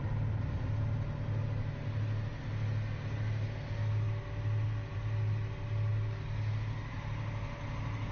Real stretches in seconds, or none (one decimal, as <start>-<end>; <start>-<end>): 0.0-8.1